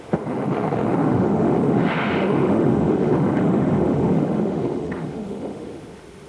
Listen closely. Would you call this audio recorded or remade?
remade